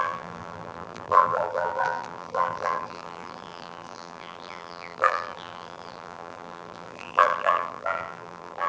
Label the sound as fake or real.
fake